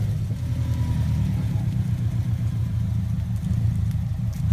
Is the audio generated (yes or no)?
no